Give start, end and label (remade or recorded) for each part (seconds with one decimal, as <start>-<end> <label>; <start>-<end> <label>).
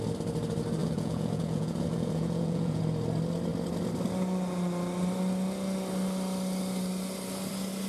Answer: 0.0-0.8 recorded; 0.8-2.8 remade; 2.8-7.9 recorded